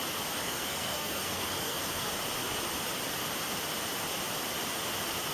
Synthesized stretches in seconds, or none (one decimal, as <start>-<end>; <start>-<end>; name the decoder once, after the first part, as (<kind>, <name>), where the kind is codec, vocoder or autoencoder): 0.4-2.1 (codec, SNAC)